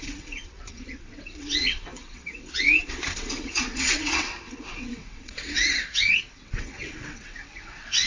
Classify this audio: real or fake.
fake